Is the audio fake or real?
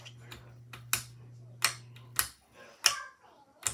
real